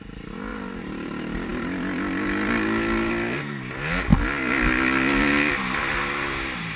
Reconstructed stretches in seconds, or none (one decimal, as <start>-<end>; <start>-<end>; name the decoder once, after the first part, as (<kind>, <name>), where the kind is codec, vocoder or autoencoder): 0.5-1.1 (vocoder, BigVGAN v2)